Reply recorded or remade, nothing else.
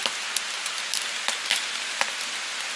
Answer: recorded